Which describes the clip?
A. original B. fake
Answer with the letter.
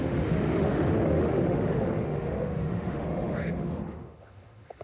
B